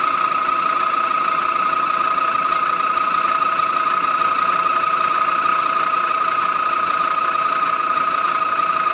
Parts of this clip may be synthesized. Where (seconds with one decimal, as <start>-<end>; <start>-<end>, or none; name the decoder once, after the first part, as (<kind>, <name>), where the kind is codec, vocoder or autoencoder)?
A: none